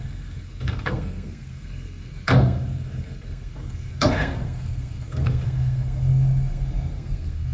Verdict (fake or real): fake